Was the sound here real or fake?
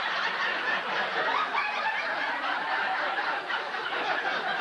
real